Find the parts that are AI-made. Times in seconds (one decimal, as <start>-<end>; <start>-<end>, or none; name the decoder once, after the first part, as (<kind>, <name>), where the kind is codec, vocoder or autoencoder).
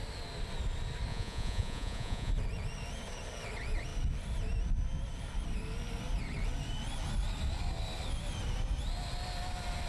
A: 1.1-2.3 (vocoder, Vocos)